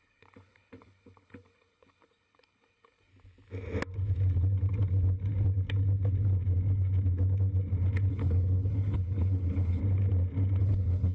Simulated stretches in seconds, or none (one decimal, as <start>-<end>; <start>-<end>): 0.0-3.1; 8.1-9.8; 10.6-11.1